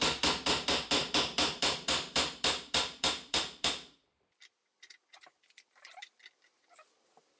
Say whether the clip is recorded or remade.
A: remade